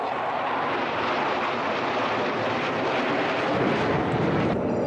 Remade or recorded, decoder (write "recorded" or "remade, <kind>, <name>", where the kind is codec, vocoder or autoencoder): remade, vocoder, BigVGAN v2